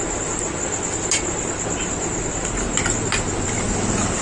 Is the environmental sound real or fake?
real